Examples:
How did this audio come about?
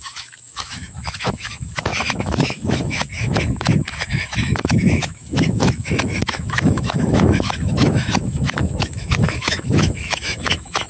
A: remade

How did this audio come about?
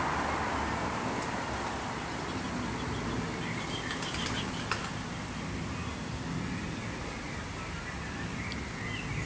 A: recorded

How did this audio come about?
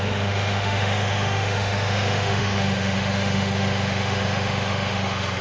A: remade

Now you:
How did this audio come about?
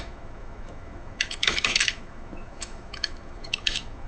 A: remade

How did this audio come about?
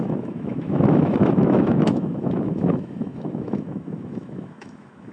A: remade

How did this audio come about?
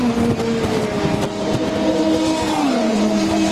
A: recorded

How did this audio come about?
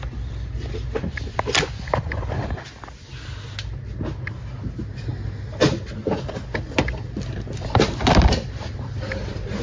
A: recorded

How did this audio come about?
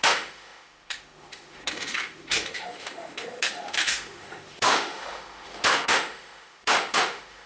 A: remade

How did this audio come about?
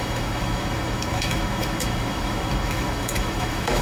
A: remade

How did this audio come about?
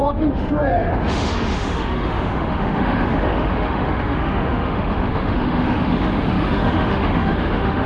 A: remade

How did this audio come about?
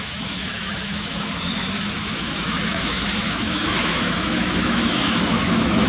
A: remade